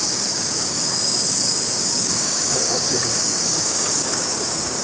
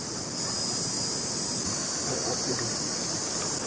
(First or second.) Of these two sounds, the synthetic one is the first